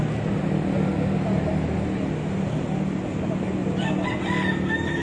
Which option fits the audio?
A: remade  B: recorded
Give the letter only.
B